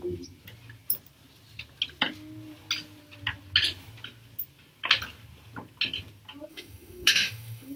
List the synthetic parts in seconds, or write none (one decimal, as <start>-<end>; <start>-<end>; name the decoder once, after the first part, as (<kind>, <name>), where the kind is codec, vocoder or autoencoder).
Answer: 6.5-7.8 (autoencoder, DAC-VAE)